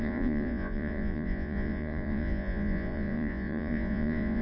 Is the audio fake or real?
fake